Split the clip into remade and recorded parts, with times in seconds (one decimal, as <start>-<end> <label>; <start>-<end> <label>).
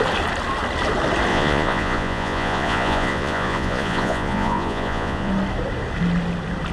0.0-1.3 recorded; 1.3-5.3 remade; 5.3-6.7 recorded